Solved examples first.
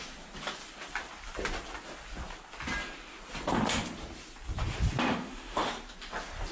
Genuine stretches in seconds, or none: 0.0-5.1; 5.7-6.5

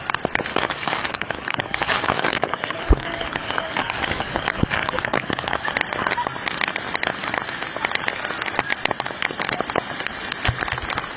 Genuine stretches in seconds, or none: 0.0-0.5; 5.7-11.2

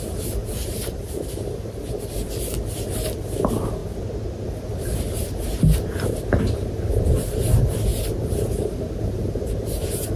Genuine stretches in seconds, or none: 0.0-0.4; 2.0-10.2

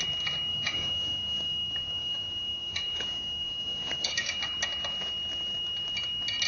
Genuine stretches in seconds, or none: 0.0-0.5; 4.4-6.5

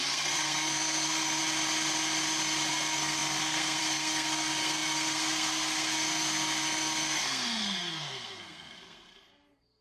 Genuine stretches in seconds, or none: 1.4-2.7

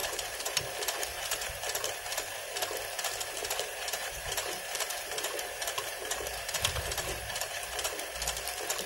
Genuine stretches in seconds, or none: 0.6-1.1; 1.6-3.4; 7.9-8.9